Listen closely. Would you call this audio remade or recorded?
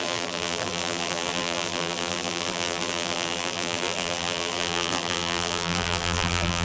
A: remade